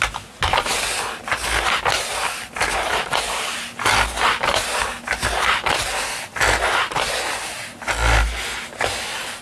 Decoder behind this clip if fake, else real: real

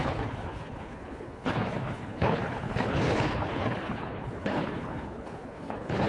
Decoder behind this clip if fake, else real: fake, codec, HILCodec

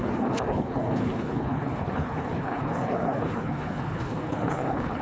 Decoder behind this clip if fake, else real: fake, codec, HILCodec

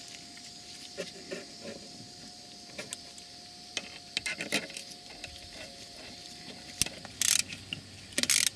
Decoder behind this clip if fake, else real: real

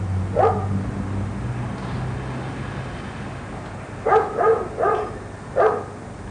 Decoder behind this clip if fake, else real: real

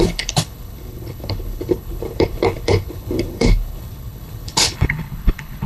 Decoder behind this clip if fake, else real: fake, codec, HILCodec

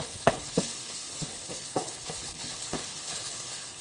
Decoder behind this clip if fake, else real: fake, codec, HILCodec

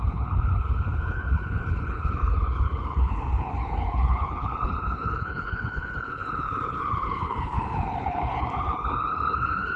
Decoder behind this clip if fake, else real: fake, codec, HILCodec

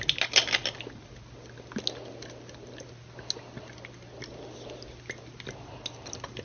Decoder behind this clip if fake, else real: real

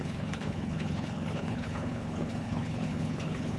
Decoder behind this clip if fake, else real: fake, codec, HILCodec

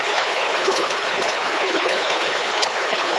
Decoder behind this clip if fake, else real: fake, codec, HILCodec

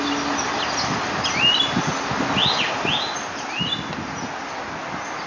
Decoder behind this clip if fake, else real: real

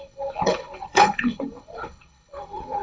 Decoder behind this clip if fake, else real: fake, codec, HILCodec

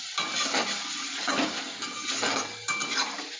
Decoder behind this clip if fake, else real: real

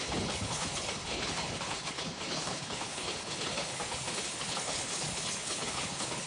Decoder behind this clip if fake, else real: fake, codec, HILCodec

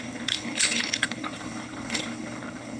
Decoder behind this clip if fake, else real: fake, codec, HILCodec